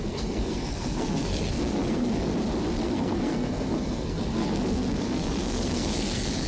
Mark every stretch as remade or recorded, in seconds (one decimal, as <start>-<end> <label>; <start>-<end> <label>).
0.0-2.3 remade; 2.3-2.8 recorded; 2.8-6.5 remade